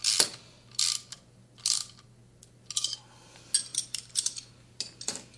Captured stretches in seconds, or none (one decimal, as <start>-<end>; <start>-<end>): 0.0-3.7; 4.5-5.4